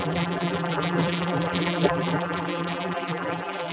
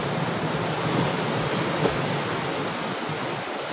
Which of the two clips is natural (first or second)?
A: second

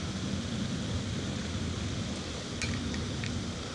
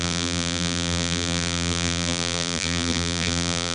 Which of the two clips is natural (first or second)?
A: first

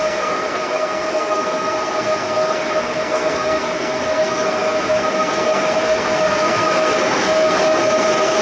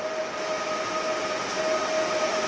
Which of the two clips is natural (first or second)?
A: second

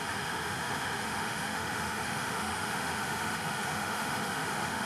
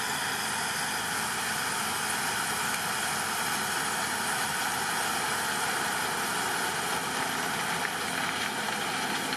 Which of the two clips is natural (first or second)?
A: second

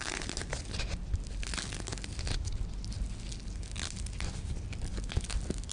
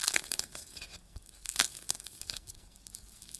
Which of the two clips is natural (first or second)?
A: first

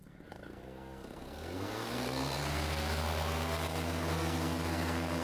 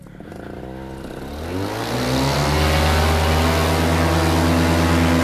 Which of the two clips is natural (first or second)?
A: second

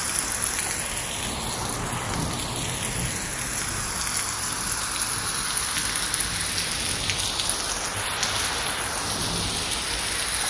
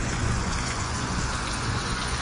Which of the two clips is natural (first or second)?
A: first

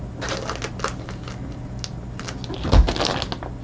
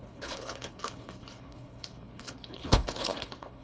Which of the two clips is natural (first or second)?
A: first